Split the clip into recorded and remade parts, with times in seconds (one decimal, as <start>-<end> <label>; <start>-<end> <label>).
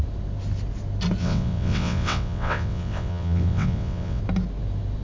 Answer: 0.0-1.2 recorded; 1.2-4.2 remade; 4.2-5.0 recorded